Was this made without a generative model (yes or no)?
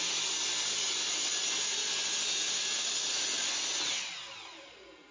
yes